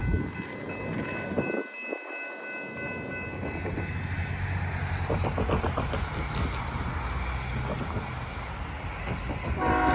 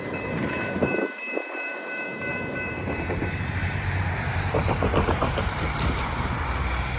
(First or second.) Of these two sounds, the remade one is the second